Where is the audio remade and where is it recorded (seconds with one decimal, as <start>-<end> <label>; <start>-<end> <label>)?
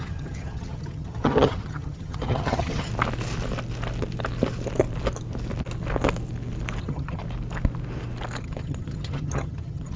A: 0.0-2.9 remade; 2.9-6.8 recorded; 6.8-7.2 remade; 7.2-8.4 recorded; 8.4-10.0 remade